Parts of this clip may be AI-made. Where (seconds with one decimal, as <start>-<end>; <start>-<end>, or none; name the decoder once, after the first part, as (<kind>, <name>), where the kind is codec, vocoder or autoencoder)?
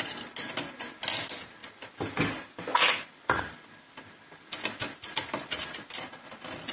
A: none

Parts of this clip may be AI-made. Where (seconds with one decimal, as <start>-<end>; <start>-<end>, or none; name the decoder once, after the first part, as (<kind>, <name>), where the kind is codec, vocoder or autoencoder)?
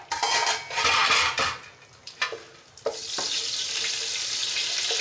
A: none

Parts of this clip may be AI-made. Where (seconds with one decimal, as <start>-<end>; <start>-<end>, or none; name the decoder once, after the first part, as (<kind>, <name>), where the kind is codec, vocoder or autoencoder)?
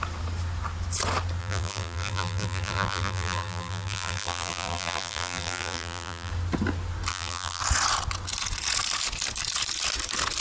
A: 1.4-6.3 (vocoder, BigVGAN v2); 7.1-7.6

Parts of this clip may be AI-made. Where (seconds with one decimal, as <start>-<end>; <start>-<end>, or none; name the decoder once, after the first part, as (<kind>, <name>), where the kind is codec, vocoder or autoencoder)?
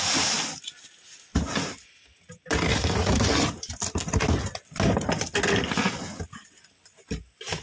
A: 2.7-3.7 (vocoder, BigVGAN v2)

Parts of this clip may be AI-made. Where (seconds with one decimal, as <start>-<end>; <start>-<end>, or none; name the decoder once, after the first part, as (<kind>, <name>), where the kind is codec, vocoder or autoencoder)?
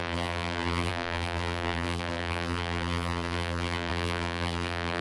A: 0.0-5.0 (vocoder, BigVGAN v2)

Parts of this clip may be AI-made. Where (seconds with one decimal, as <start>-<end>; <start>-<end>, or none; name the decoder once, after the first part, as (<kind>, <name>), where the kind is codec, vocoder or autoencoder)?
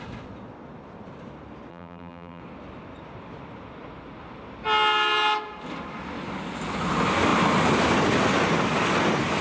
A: 1.7-2.4 (vocoder, BigVGAN v2)